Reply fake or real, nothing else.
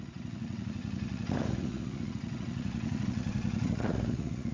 fake